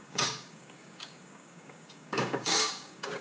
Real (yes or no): no